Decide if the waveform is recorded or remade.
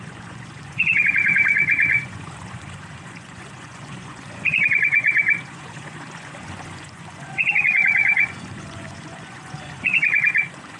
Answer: remade